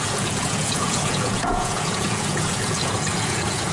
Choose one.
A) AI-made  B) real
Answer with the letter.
A